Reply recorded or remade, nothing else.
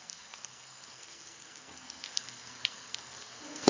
remade